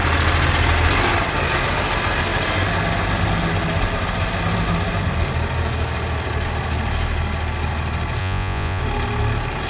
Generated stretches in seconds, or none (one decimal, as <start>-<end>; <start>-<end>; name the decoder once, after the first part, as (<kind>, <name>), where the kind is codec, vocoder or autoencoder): 8.2-8.8 (vocoder, Vocos)